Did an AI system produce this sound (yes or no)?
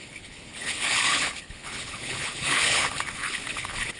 yes